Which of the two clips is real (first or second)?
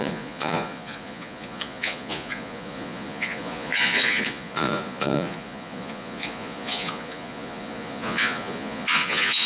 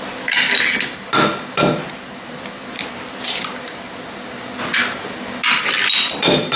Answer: second